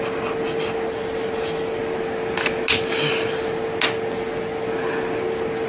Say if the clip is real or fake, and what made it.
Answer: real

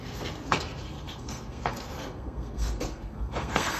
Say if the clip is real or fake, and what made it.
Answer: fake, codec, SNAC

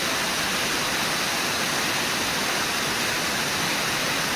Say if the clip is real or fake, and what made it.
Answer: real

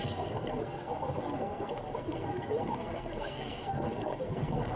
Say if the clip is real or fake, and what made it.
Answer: fake, codec, SNAC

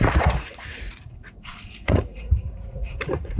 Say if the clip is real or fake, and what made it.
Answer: fake, vocoder, Vocos